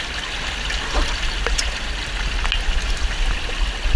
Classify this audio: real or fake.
real